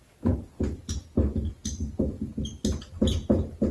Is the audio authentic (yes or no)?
yes